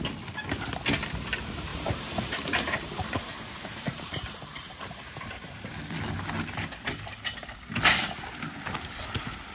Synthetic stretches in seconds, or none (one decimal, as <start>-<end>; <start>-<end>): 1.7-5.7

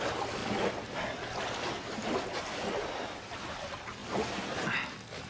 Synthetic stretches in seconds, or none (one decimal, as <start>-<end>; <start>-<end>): none

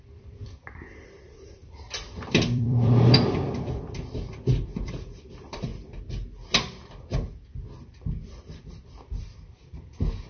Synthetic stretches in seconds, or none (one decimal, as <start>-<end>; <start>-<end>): 0.0-5.7; 8.6-10.3

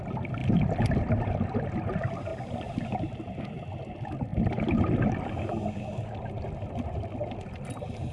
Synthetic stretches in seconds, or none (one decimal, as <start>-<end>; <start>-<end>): 0.4-1.1; 2.3-3.6

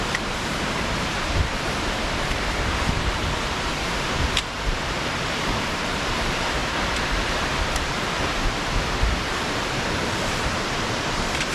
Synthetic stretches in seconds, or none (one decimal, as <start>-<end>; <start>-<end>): 0.0-11.5

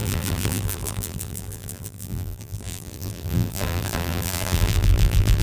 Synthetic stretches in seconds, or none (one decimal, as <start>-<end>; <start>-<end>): 0.0-5.4